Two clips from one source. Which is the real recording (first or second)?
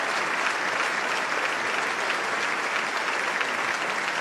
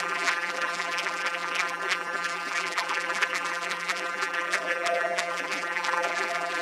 first